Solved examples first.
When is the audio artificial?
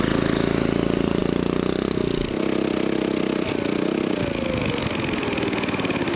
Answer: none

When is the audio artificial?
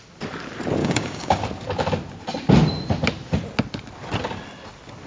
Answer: 0.8-1.4 (codec, DAC)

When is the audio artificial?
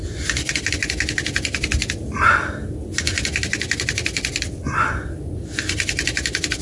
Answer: none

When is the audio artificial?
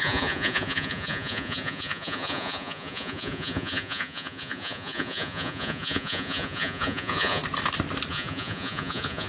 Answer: 0.0-7.4 (vocoder, Vocos); 8.1-9.3